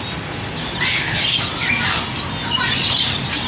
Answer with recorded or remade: recorded